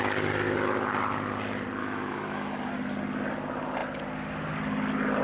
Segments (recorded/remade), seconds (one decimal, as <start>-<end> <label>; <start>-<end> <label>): 0.0-1.8 recorded; 1.8-2.7 remade; 2.7-5.2 recorded